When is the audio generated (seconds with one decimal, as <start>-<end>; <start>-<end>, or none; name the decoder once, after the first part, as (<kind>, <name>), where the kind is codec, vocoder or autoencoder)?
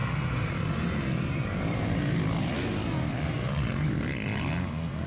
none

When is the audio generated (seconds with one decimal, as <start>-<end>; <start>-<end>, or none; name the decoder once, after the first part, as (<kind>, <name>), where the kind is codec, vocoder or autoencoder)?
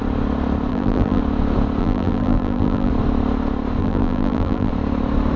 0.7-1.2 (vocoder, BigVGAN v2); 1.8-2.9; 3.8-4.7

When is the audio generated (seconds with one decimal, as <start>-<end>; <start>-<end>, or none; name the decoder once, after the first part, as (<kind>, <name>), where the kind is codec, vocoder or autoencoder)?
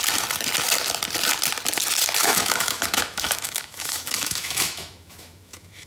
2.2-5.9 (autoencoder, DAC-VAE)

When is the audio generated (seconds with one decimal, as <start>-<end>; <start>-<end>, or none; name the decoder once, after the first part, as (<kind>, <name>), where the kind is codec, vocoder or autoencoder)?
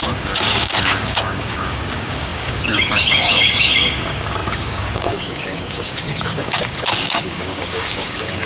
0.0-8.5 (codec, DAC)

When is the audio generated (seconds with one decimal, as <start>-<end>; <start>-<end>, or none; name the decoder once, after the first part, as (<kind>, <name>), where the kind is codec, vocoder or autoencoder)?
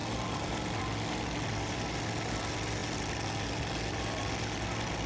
none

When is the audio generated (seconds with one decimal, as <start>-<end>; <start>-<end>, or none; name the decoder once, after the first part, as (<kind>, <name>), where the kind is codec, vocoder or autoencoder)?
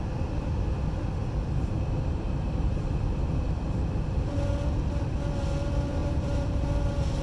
6.0-6.7 (vocoder, BigVGAN v2)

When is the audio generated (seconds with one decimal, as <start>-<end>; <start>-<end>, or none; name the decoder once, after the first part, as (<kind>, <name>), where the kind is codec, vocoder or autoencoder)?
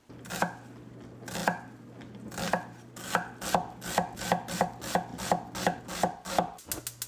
none